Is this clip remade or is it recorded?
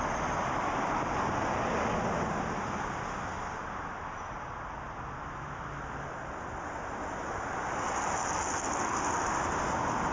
recorded